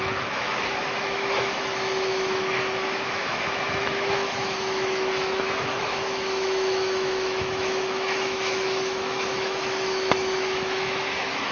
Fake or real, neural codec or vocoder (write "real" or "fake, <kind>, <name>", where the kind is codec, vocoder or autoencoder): fake, autoencoder, DAC-VAE